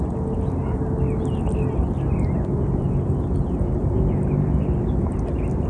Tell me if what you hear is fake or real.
real